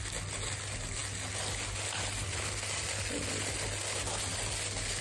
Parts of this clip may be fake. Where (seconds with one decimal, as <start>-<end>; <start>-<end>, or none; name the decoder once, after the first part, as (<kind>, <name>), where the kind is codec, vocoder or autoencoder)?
none